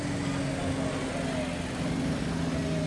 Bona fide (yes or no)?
yes